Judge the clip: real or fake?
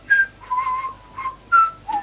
real